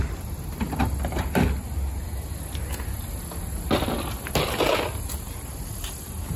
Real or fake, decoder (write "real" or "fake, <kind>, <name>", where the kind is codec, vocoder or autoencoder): real